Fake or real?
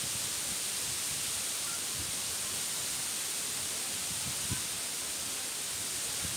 real